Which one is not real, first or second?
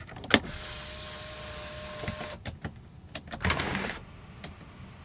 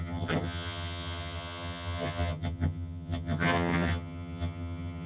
second